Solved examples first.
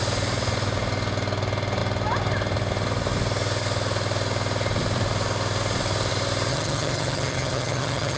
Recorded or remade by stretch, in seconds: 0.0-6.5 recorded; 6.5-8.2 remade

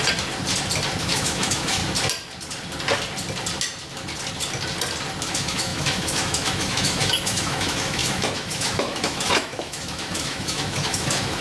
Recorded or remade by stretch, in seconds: 0.0-1.0 recorded; 1.0-1.8 remade; 1.8-5.3 recorded; 5.3-11.4 remade

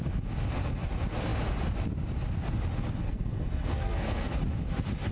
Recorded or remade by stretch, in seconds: 0.0-3.0 recorded; 3.0-4.3 remade; 4.3-5.1 recorded

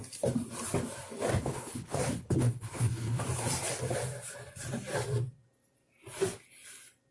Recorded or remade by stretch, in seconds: 0.0-1.3 recorded; 1.3-3.2 remade; 3.2-7.1 recorded

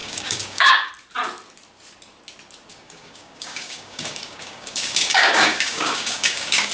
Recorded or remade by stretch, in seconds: 0.0-0.9 remade; 0.9-2.7 recorded; 2.7-6.7 remade

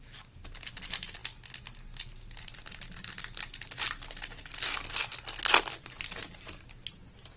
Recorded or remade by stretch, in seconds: 0.0-7.4 recorded

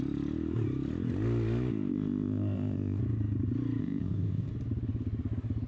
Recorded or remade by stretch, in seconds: 0.0-1.9 recorded; 1.9-3.0 remade; 3.0-3.8 recorded; 3.8-4.5 remade; 4.5-5.7 recorded

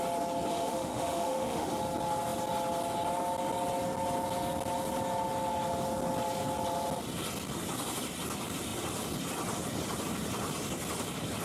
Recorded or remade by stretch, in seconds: 0.0-0.5 recorded; 0.5-1.7 remade; 1.7-11.4 recorded